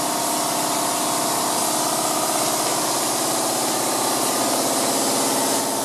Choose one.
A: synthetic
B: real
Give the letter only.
B